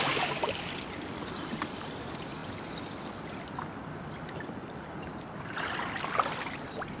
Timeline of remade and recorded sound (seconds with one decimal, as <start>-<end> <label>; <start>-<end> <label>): 0.0-7.0 recorded

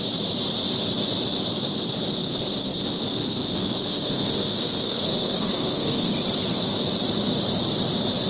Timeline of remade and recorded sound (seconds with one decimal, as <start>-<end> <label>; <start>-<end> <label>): 0.0-2.2 recorded; 2.2-2.8 remade; 2.8-3.2 recorded; 3.2-6.1 remade; 6.1-8.3 recorded

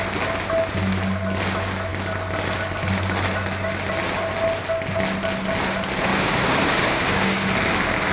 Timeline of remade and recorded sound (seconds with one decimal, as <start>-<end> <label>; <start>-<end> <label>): 0.0-6.1 recorded; 6.1-7.5 remade; 7.5-8.1 recorded